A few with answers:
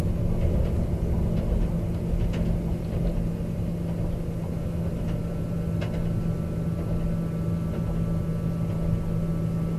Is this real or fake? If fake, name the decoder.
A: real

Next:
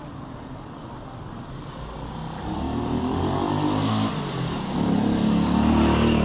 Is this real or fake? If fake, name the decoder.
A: real